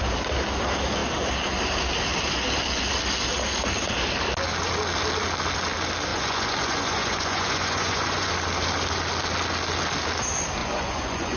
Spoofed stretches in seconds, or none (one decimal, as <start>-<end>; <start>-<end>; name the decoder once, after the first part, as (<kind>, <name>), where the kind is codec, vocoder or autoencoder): 6.1-8.3 (vocoder, Vocos); 10.6-11.4